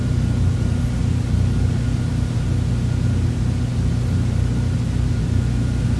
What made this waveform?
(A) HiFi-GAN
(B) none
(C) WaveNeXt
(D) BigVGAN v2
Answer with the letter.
B